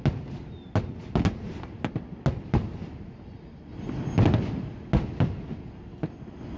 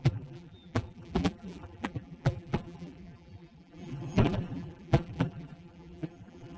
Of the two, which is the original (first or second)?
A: first